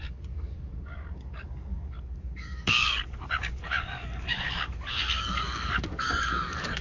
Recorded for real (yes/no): no